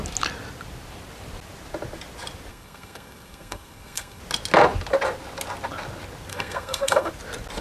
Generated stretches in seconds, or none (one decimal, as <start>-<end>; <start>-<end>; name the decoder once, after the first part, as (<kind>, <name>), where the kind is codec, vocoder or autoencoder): 2.5-4.2 (codec, SNAC); 6.3-7.1